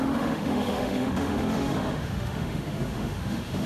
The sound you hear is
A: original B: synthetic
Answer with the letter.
B